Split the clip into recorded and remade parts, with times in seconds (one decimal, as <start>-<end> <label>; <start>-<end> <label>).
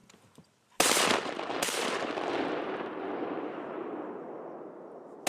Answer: 0.0-5.3 recorded